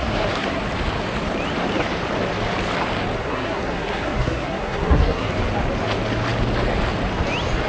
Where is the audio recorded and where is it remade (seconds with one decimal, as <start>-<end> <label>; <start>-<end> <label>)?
0.0-0.6 remade; 0.6-3.2 recorded; 3.2-5.3 remade; 5.3-7.7 recorded